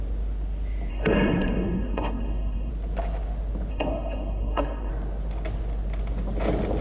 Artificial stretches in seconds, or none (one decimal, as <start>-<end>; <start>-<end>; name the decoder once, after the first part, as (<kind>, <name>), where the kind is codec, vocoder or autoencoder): 0.9-2.7 (codec, SNAC); 3.7-4.9